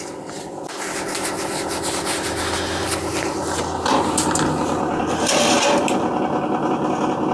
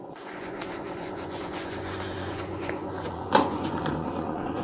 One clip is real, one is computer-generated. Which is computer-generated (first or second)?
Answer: second